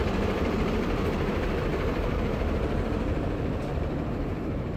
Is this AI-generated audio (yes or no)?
yes